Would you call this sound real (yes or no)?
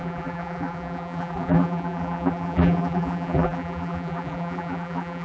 no